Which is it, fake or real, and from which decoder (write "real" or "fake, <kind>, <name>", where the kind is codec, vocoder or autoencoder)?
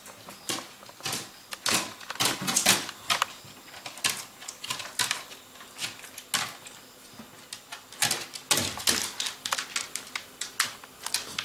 real